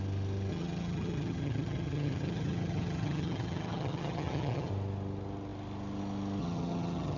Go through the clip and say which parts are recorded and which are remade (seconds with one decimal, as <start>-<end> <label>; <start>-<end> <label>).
0.0-0.5 recorded; 0.5-4.7 remade; 4.7-6.4 recorded; 6.4-7.2 remade